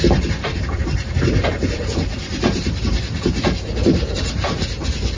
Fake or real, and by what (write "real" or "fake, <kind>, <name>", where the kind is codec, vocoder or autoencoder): fake, vocoder, BigVGAN v2